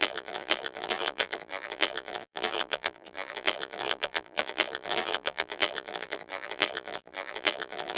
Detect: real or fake fake